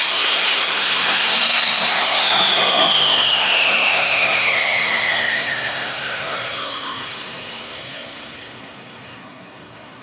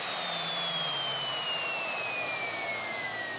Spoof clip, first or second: first